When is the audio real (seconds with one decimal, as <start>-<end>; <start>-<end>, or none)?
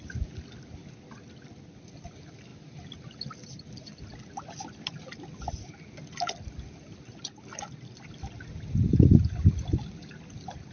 0.0-10.7